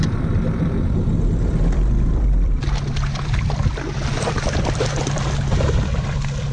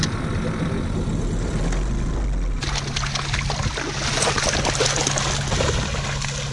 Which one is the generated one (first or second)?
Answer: first